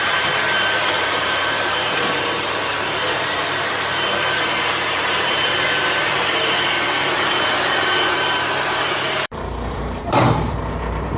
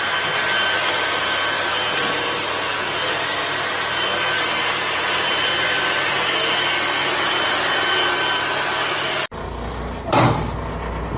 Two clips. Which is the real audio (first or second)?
second